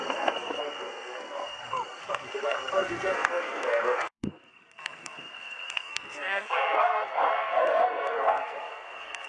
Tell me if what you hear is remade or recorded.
remade